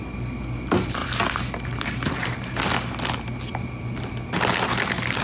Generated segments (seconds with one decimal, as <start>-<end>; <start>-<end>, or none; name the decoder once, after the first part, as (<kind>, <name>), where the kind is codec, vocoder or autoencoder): none